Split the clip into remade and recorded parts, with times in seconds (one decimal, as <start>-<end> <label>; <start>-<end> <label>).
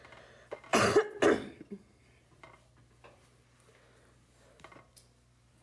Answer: 0.0-0.7 recorded; 0.7-1.2 remade; 1.2-5.6 recorded